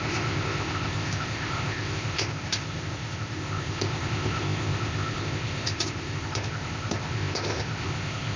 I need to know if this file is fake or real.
fake